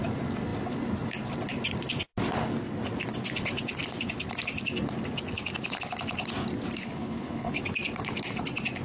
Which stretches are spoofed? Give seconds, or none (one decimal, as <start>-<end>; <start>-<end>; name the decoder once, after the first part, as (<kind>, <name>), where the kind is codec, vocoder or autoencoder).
6.8-7.6 (codec, HILCodec)